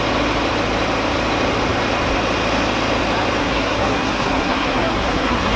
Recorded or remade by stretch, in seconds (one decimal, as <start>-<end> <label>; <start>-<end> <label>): 0.0-3.4 recorded; 3.4-5.6 remade